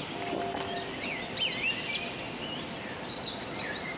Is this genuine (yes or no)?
yes